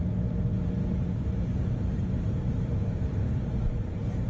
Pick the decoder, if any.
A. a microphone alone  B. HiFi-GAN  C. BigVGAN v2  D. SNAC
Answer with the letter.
C